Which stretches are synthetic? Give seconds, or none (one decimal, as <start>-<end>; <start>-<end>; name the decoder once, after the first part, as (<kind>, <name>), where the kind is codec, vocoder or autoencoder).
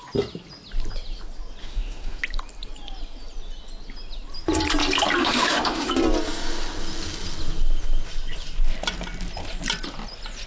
1.6-2.2 (autoencoder, DAC-VAE); 5.2-5.9